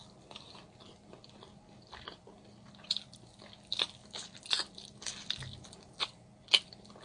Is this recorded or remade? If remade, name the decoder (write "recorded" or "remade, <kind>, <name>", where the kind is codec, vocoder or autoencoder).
recorded